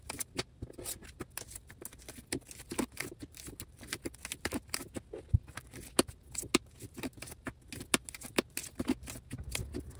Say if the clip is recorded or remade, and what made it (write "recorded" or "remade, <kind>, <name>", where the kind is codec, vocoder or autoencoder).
recorded